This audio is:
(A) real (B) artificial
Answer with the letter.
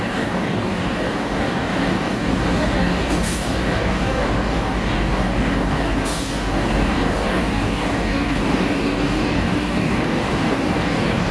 B